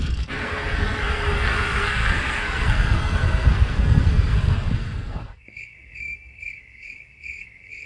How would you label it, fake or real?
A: fake